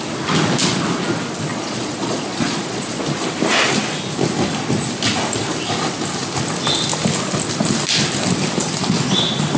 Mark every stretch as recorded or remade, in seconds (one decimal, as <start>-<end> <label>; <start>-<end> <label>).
0.0-1.5 recorded; 1.5-3.0 remade; 3.0-9.6 recorded